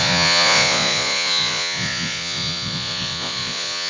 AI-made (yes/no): yes